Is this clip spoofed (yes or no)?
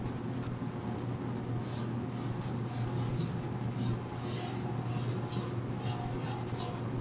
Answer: no